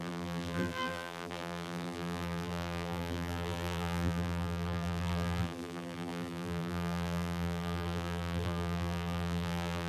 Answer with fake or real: fake